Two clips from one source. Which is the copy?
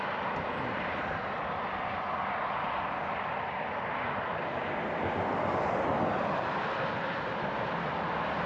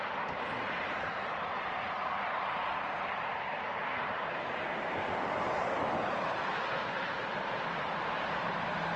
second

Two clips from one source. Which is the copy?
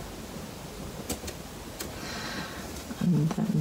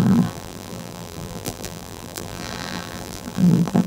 second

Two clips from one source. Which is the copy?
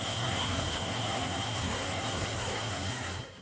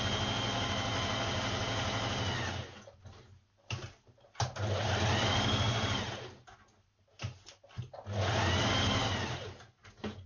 first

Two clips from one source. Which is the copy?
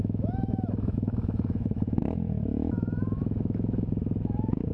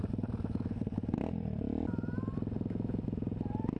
first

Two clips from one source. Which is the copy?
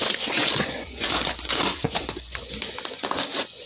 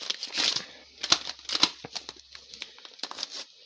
first